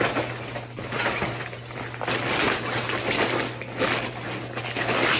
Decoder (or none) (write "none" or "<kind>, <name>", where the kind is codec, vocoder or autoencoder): none